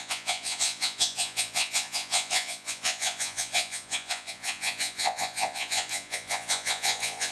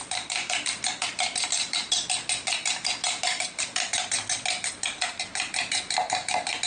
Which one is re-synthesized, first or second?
first